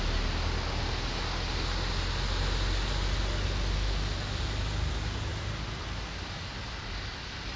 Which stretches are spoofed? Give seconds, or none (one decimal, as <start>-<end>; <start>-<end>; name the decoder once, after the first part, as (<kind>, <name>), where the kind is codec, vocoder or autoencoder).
none